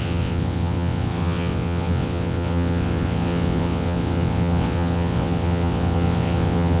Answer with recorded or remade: remade